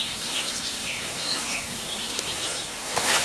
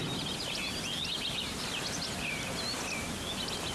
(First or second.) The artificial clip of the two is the first